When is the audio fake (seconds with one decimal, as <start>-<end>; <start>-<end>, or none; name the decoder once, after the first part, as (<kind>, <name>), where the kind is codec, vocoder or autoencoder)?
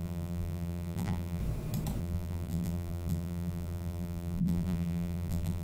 0.0-1.4 (vocoder, BigVGAN v2); 2.0-5.6